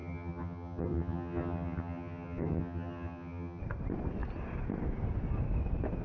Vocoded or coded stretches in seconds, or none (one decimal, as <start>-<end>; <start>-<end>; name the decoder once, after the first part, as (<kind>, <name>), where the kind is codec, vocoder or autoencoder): 0.0-3.6 (vocoder, HiFi-GAN)